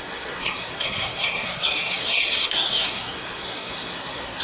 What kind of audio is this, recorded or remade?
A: remade